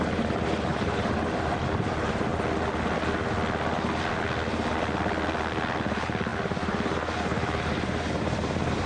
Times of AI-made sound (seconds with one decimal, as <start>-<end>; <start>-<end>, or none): 0.0-2.3; 5.8-8.9